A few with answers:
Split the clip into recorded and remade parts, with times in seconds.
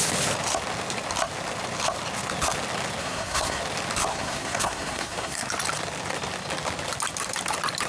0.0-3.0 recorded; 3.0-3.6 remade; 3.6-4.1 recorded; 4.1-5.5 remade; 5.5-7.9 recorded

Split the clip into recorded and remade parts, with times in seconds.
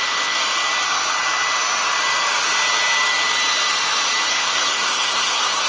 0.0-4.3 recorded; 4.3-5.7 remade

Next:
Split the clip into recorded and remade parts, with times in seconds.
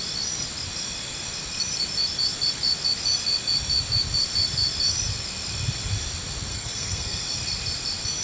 0.0-6.5 recorded; 6.5-7.2 remade; 7.2-8.2 recorded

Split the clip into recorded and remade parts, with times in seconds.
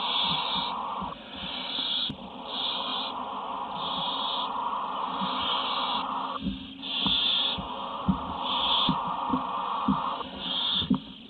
0.0-11.3 recorded